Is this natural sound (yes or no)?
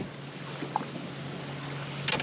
yes